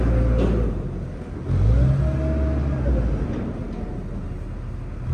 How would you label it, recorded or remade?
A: recorded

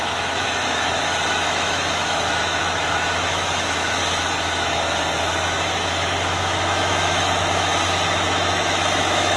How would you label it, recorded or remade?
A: remade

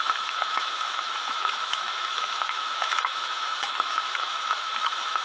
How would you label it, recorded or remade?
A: remade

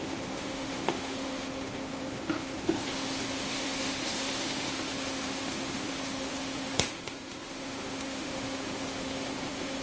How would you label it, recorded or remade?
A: remade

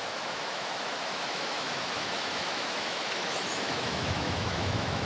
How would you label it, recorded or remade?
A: remade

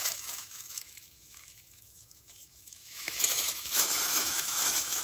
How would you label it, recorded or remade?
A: remade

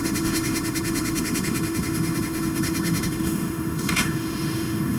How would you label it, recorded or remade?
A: remade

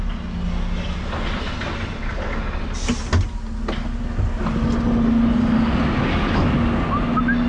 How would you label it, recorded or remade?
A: recorded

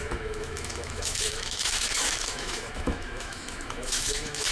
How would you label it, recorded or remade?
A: remade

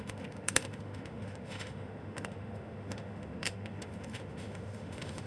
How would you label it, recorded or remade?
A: remade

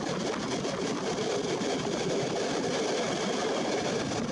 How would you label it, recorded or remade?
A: recorded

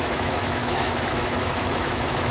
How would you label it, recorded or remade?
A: remade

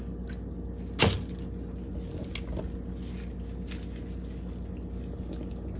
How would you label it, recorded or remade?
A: recorded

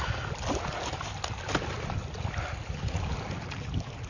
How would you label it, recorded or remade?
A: recorded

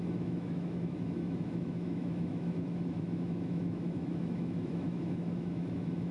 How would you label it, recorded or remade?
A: remade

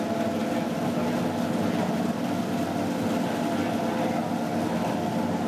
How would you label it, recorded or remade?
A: recorded